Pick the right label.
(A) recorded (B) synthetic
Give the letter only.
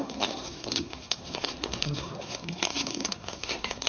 B